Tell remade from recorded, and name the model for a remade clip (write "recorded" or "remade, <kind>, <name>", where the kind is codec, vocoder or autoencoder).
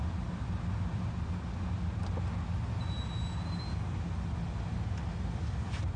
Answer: recorded